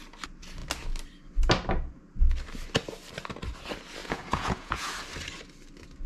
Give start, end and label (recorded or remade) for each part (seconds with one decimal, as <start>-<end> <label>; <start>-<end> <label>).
0.0-4.0 recorded; 4.0-5.0 remade; 5.0-6.1 recorded